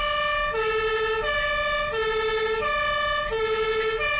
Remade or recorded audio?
recorded